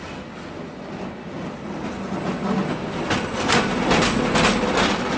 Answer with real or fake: real